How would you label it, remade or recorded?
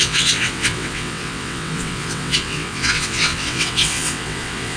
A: remade